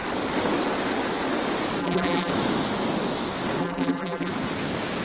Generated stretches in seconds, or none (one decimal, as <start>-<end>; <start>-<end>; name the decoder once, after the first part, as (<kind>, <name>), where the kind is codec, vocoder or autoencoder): 1.8-2.3 (vocoder, BigVGAN v2); 3.6-4.3